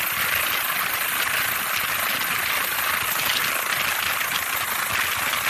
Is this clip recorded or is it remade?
recorded